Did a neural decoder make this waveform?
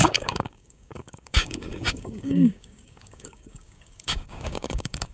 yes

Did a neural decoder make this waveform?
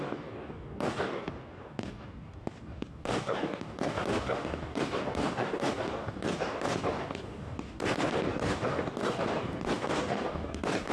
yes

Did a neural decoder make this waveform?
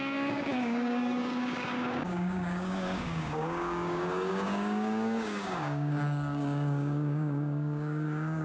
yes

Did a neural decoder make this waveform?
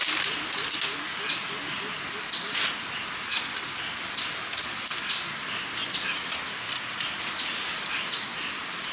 no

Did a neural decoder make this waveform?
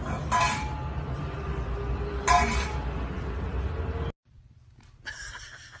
no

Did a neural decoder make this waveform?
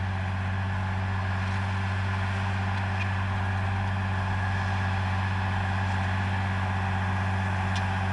no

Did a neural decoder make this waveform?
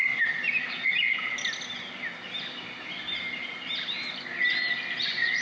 no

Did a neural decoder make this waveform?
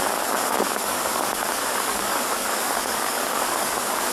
yes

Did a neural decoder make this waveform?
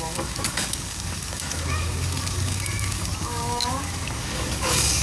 yes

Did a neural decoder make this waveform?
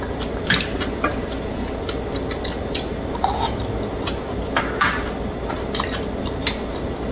no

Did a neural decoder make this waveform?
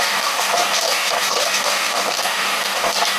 yes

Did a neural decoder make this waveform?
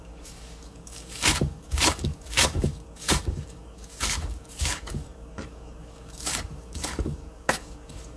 yes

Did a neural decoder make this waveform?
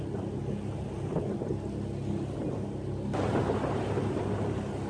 no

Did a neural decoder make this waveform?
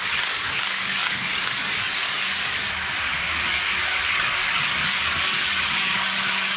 yes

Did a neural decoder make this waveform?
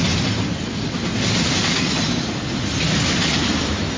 no